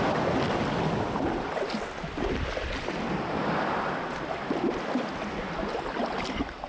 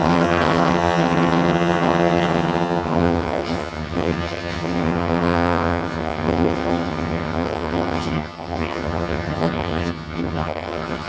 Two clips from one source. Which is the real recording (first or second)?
first